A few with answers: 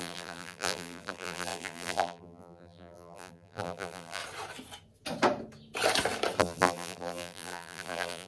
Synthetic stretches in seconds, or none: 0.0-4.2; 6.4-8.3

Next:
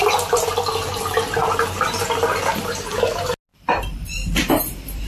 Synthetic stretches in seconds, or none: 3.5-5.1

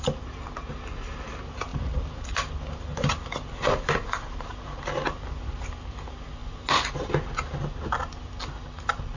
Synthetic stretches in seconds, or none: none

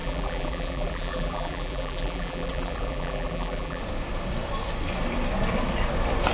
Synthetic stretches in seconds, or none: 0.0-3.8

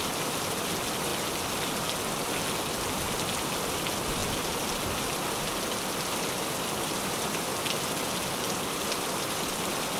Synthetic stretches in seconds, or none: 0.0-1.1; 3.1-4.2; 6.0-10.0